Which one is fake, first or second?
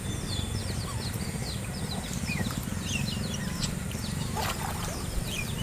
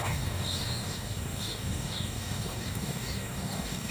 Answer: second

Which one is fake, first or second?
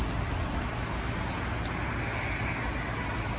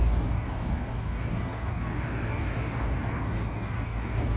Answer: second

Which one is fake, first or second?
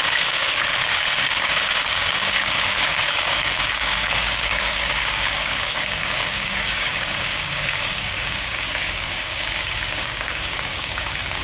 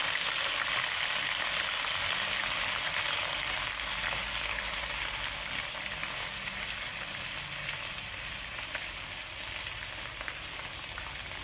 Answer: first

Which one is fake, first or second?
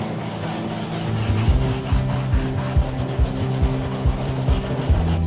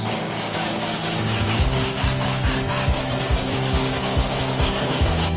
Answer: second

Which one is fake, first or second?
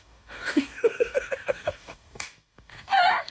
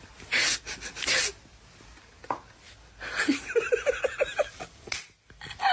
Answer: first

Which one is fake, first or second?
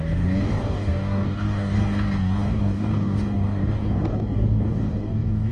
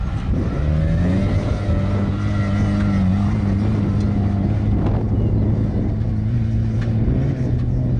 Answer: first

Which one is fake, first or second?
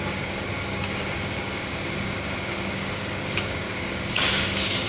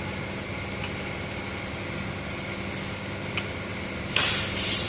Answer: first